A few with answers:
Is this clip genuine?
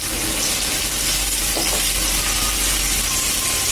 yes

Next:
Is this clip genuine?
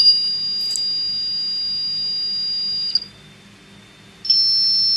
yes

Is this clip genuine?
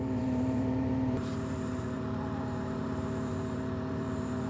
no